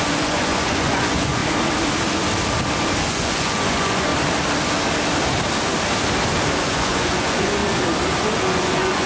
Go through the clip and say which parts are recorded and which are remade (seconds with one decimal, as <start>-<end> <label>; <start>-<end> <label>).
0.0-1.4 remade; 1.4-3.1 recorded; 3.1-4.1 remade; 4.1-6.6 recorded; 6.6-7.6 remade; 7.6-8.4 recorded; 8.4-9.1 remade